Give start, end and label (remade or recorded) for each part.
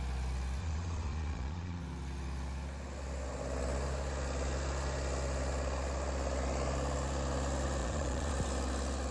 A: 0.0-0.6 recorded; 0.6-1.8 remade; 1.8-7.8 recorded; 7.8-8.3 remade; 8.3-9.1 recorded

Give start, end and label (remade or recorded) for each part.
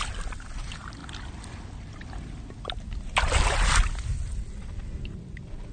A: 0.0-5.7 recorded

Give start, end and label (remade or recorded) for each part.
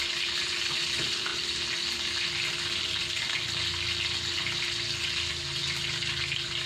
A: 0.0-6.7 recorded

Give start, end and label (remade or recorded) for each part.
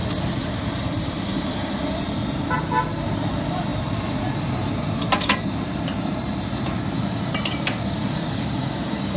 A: 0.0-1.2 remade; 1.2-2.2 recorded; 2.2-2.8 remade; 2.8-3.7 recorded; 3.7-9.2 remade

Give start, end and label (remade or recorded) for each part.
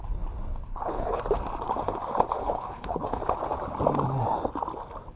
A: 0.0-0.7 recorded; 0.7-1.2 remade; 1.2-2.4 recorded; 2.4-3.2 remade; 3.2-5.2 recorded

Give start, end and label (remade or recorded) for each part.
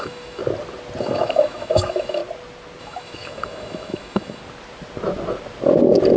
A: 0.0-0.4 remade; 0.4-1.0 recorded; 1.0-2.2 remade; 2.2-2.8 recorded; 2.8-4.4 remade; 4.4-6.2 recorded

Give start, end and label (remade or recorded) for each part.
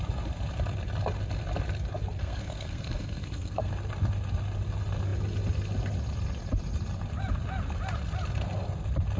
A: 0.0-2.2 recorded; 2.2-3.7 remade; 3.7-9.2 recorded